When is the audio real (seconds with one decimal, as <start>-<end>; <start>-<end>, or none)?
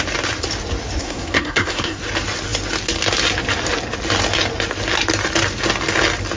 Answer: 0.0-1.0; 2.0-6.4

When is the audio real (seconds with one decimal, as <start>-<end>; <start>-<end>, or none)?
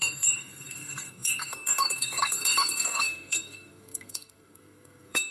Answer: none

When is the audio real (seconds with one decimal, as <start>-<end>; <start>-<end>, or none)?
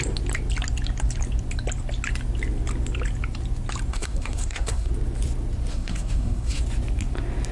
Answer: 0.0-3.9; 4.9-5.7; 6.6-7.5